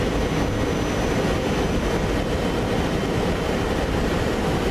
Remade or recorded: recorded